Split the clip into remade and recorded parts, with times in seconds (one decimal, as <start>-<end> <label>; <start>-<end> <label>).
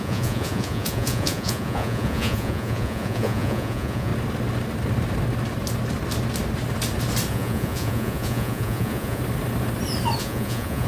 0.0-4.1 remade; 4.1-7.3 recorded; 7.3-9.2 remade; 9.2-10.2 recorded; 10.2-10.9 remade